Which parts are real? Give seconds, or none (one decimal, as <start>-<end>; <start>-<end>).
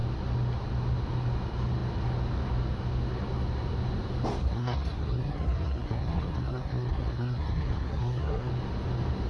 0.0-4.4; 8.5-9.3